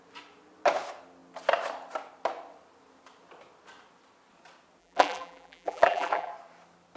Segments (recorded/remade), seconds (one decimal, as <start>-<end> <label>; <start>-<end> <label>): 0.0-4.8 recorded; 4.8-6.3 remade; 6.3-7.0 recorded